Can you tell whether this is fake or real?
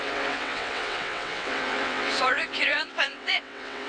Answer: fake